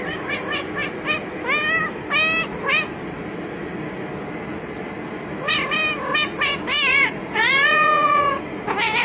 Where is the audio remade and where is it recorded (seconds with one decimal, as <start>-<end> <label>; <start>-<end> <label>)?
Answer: 0.0-6.9 recorded; 6.9-8.4 remade; 8.4-9.0 recorded